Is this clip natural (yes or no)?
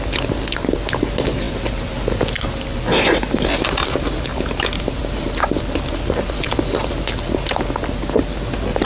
yes